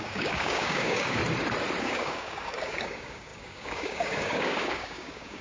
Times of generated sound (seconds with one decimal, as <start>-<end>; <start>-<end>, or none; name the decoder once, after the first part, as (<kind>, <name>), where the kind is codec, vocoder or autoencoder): 0.0-1.2 (codec, DAC); 1.8-5.4